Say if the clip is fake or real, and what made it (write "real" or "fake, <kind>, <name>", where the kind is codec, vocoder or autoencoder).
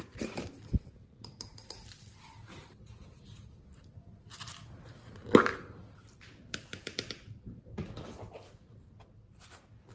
real